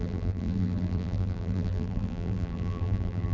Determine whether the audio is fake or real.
fake